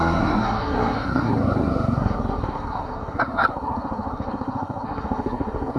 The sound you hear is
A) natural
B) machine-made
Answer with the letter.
B